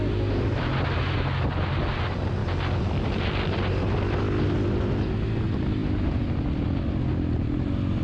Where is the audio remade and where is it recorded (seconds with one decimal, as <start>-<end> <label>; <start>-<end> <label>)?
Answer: 0.0-2.4 recorded; 2.4-3.2 remade; 3.2-8.0 recorded